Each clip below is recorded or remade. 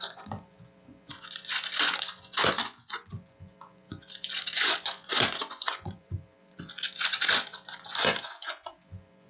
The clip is remade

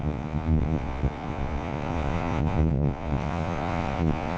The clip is remade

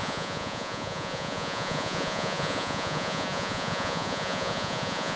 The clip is remade